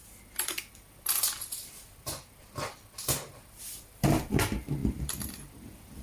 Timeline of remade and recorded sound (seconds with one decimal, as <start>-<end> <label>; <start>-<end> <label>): 0.0-0.7 recorded; 0.7-1.2 remade; 1.2-3.3 recorded; 3.3-6.0 remade